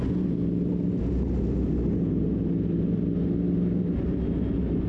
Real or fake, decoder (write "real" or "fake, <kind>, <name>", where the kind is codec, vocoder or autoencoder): real